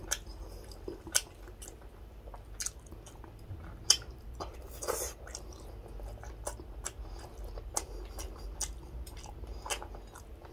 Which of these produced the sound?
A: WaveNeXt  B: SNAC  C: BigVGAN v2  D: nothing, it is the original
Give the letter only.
D